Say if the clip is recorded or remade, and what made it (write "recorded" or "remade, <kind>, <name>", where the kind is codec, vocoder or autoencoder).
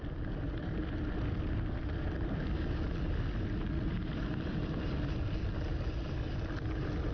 recorded